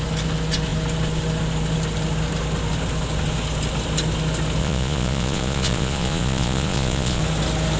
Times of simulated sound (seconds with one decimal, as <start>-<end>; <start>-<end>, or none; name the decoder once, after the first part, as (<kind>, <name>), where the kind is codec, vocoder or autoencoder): 4.6-7.2 (vocoder, Vocos)